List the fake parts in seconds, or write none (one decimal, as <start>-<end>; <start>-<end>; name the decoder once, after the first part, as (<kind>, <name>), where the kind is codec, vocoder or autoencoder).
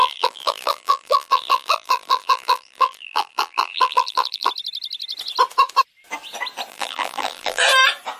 0.0-4.5 (vocoder, BigVGAN v2); 6.7-7.6